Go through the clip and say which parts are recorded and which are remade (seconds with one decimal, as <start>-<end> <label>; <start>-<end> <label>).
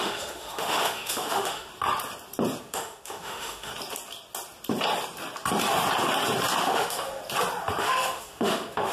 0.0-1.7 remade; 1.7-2.6 recorded; 2.6-3.7 remade; 3.7-6.6 recorded; 6.6-7.2 remade; 7.2-7.8 recorded; 7.8-8.9 remade